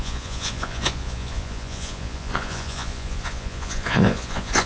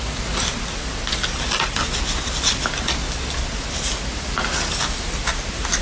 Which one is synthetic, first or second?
first